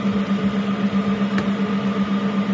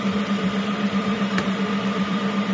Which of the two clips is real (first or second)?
first